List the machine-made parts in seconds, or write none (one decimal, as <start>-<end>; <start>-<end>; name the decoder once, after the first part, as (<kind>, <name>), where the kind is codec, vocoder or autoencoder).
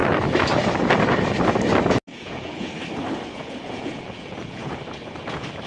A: 2.1-2.7 (vocoder, Vocos); 3.3-4.7